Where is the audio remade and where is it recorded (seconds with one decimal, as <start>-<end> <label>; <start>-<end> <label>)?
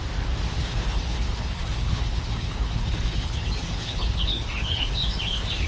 0.0-0.6 recorded; 0.6-5.7 remade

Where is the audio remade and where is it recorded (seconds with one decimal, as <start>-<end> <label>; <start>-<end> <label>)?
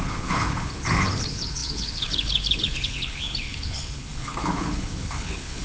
0.0-5.6 remade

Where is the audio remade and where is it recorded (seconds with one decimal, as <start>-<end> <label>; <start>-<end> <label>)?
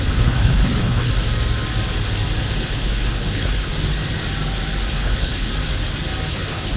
0.0-1.1 remade; 1.1-2.6 recorded; 2.6-3.7 remade; 3.7-4.9 recorded; 4.9-5.5 remade; 5.5-6.3 recorded; 6.3-6.8 remade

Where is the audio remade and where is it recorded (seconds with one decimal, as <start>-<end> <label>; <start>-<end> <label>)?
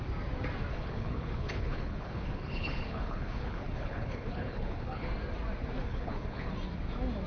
0.0-0.7 recorded; 0.7-5.1 remade; 5.1-5.8 recorded; 5.8-6.5 remade; 6.5-7.3 recorded